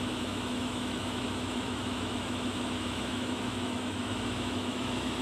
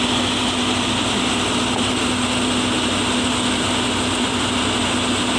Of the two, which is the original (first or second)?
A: second